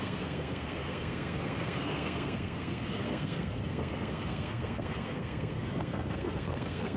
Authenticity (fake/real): fake